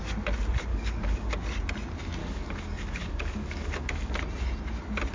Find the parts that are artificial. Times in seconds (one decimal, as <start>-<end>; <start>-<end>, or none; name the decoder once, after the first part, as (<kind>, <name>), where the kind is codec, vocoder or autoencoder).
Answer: 0.7-1.3 (codec, DAC); 2.2-4.1

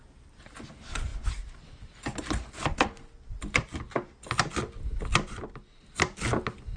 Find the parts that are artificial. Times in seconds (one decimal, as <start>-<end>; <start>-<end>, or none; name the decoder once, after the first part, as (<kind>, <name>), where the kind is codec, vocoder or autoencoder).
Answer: none

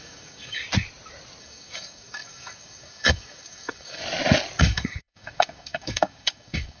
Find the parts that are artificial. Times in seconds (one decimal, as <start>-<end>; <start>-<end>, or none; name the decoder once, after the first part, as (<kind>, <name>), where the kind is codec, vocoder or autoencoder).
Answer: 0.0-0.6 (codec, DAC); 1.4-4.0; 4.6-6.8

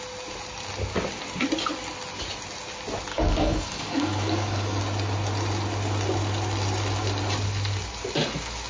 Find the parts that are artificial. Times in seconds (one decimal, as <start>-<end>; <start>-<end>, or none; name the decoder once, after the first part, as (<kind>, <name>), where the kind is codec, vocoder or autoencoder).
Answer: 3.1-4.8 (codec, DAC)

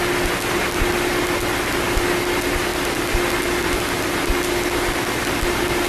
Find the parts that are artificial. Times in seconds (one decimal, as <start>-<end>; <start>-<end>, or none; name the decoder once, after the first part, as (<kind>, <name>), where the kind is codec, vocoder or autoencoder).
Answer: none